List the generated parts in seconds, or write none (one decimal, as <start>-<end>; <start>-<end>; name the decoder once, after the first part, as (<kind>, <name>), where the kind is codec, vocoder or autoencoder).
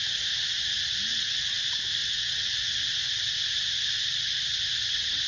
1.1-1.6 (vocoder, WaveNeXt); 2.0-2.7